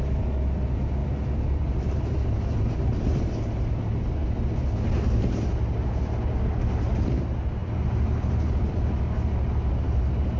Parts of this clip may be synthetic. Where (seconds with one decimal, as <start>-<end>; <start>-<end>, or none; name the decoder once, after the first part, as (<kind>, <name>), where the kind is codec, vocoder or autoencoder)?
1.0-3.2 (vocoder, BigVGAN v2); 7.6-8.8